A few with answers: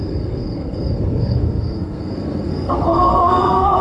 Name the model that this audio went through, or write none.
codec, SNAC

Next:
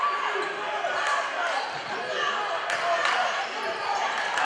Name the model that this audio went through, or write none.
none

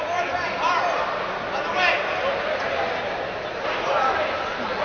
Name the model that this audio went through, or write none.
none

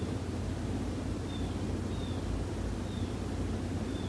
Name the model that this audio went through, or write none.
none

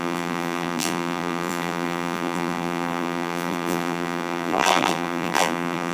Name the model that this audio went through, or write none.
vocoder, BigVGAN v2